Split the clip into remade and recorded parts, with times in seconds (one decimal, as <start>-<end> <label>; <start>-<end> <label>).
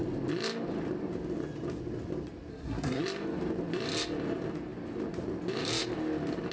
0.0-2.5 recorded; 2.5-3.0 remade; 3.0-6.5 recorded